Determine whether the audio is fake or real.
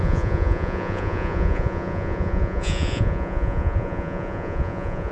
fake